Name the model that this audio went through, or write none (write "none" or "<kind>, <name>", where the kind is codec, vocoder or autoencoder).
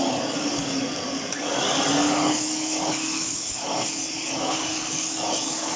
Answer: codec, DAC